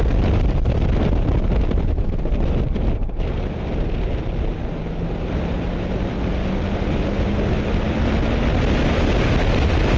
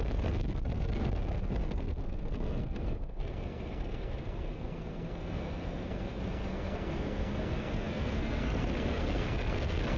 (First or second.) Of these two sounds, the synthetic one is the second